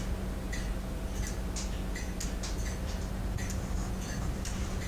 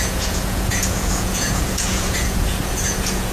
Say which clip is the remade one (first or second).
second